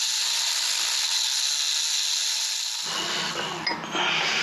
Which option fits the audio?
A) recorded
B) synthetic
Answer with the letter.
A